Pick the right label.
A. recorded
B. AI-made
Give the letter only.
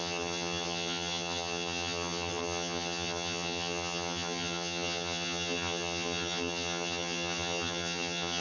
B